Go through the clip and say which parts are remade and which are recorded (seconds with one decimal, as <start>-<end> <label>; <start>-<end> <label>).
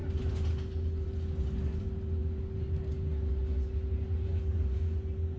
0.0-5.4 recorded